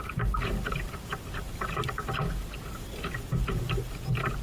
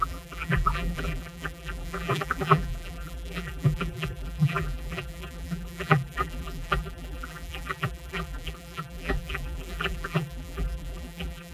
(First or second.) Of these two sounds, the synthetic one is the second